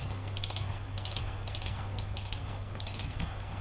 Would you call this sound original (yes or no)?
no